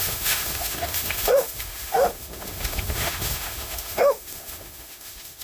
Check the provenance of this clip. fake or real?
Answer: fake